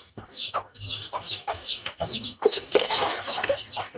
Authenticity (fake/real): fake